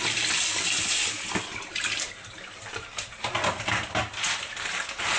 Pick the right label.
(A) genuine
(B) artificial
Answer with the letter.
B